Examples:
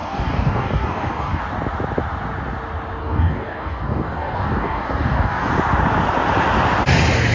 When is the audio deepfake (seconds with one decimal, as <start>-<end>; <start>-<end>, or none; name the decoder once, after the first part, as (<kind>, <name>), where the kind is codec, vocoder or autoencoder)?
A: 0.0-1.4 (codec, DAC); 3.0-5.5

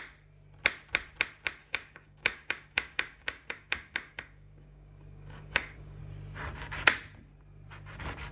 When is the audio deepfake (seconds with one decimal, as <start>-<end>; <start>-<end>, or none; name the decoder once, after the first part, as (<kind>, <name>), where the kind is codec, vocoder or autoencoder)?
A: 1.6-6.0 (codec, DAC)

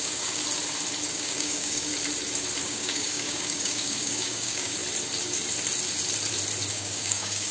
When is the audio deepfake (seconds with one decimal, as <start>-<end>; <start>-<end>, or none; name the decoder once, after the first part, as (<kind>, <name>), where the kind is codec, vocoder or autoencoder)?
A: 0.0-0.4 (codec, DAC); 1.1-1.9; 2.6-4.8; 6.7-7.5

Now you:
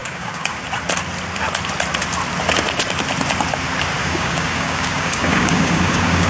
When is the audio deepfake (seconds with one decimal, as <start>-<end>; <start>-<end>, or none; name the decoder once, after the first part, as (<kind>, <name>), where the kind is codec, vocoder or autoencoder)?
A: 0.0-0.6 (codec, DAC); 4.0-6.3

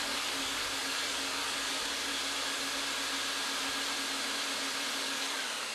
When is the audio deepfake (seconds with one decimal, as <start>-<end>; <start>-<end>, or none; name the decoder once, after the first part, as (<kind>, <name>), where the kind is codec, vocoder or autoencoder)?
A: 0.0-2.1 (codec, DAC); 4.9-5.7

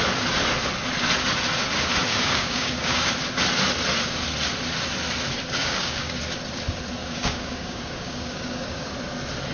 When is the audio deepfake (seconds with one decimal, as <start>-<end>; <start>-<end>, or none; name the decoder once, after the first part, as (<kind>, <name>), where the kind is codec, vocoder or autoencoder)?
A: 2.1-3.1 (codec, DAC); 5.6-6.2; 7.0-8.9